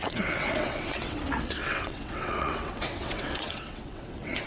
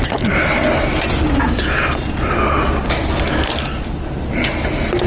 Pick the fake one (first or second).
first